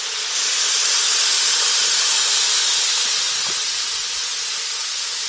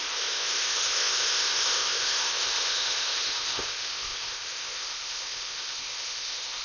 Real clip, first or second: first